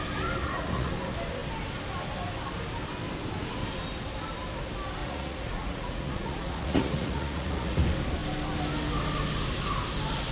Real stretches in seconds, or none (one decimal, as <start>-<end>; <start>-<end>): 0.0-0.4; 0.9-5.0; 7.8-10.3